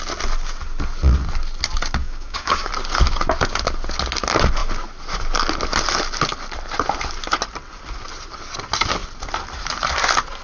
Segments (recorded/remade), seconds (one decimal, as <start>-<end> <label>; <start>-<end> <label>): 0.0-2.0 recorded; 2.0-2.7 remade; 2.7-10.4 recorded